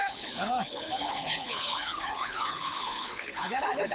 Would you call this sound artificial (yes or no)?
yes